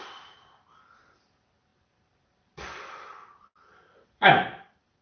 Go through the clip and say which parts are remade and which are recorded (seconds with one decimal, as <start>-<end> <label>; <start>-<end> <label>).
0.0-1.7 recorded; 1.7-5.0 remade